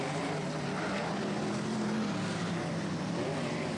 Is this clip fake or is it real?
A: real